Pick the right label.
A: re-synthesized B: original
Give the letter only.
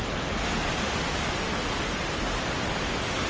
B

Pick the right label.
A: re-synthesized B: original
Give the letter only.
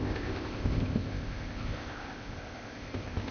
A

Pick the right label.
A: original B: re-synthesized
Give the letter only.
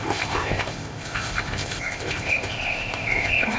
B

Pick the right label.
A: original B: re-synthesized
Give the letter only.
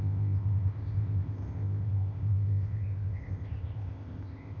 B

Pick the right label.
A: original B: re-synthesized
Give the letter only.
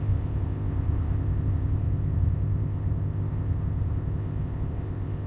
B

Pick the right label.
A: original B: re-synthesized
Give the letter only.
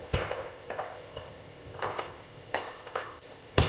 B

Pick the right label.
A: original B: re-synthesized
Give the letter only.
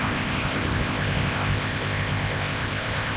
B